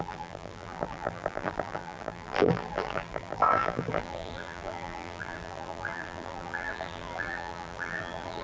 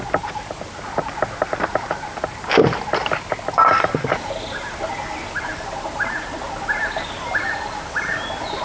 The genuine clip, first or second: second